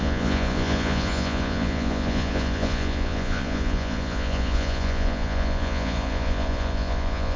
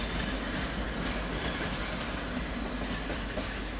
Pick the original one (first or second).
second